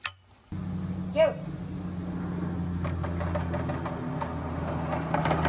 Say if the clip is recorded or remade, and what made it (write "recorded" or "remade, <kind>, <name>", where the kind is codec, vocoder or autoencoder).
recorded